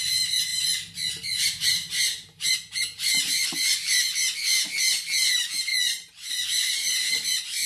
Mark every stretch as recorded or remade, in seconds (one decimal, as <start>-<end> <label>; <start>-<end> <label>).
0.0-0.5 remade; 0.5-1.4 recorded; 1.4-3.9 remade; 3.9-4.5 recorded; 4.5-5.7 remade; 5.7-6.3 recorded; 6.3-7.7 remade